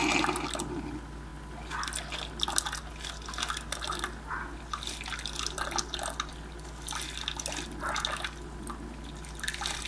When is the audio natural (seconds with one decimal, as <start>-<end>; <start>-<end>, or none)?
0.0-9.9